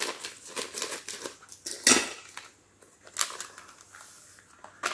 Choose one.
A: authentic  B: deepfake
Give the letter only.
A